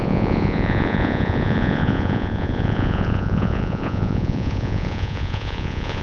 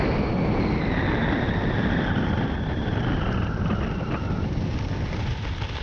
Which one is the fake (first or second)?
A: first